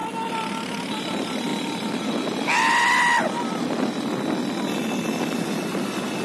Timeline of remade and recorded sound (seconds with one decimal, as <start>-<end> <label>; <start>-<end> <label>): 0.0-6.2 recorded